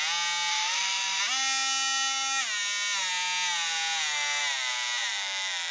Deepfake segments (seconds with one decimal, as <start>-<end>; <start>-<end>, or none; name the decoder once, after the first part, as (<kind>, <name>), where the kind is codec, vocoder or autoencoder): 0.5-1.2 (autoencoder, DAC-VAE)